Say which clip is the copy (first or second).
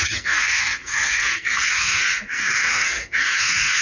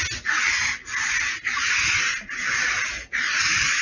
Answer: first